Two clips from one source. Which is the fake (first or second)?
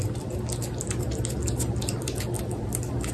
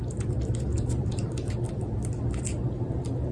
second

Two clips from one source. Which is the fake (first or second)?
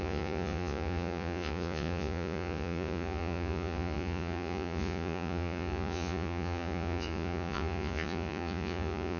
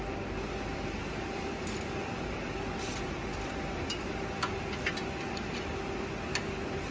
first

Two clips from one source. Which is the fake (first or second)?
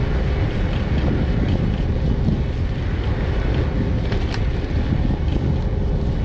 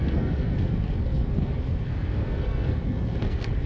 second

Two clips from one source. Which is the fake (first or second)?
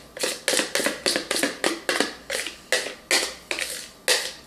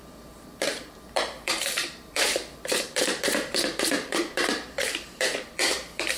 second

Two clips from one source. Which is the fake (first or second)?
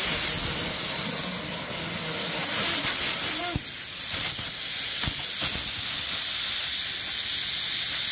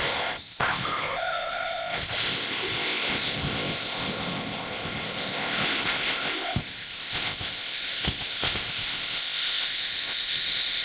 second